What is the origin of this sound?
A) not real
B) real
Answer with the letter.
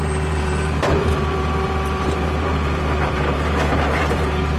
A